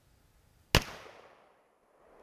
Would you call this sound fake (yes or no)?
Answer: no